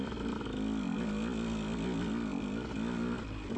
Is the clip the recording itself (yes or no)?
yes